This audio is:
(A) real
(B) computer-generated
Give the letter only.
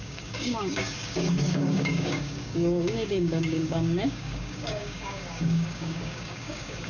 B